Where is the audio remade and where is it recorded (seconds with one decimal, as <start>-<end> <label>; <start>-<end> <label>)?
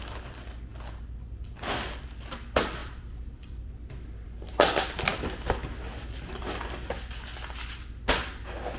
0.0-2.8 recorded; 2.8-4.5 remade; 4.5-8.8 recorded